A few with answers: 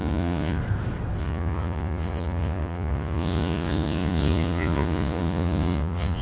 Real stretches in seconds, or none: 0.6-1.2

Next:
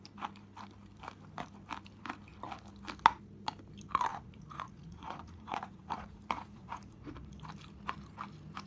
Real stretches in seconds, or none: 0.0-4.1; 7.3-8.7

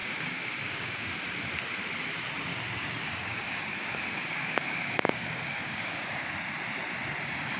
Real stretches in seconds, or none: 1.1-2.5; 6.3-7.6

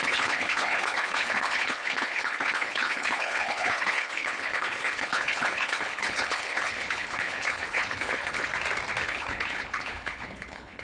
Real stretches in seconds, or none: 8.5-9.0

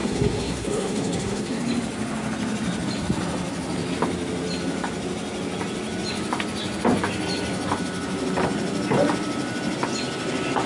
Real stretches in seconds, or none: 1.6-10.7

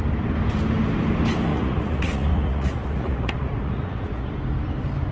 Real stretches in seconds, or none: 0.0-1.5; 4.3-5.1